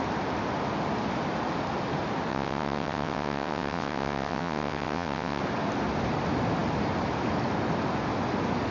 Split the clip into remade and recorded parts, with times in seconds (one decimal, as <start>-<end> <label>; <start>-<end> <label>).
0.0-2.3 recorded; 2.3-5.4 remade; 5.4-8.7 recorded